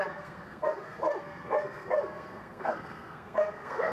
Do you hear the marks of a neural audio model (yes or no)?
yes